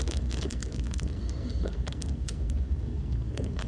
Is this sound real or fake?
fake